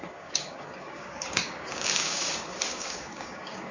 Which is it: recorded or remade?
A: remade